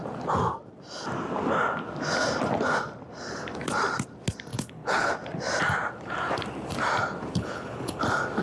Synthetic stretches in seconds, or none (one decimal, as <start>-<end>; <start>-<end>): 4.5-5.1; 7.3-8.0